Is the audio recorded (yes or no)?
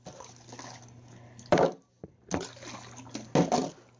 yes